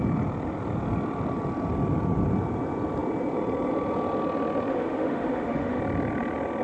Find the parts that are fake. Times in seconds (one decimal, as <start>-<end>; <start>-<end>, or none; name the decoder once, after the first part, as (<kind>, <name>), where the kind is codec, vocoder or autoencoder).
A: 4.7-5.8 (autoencoder, DAC-VAE)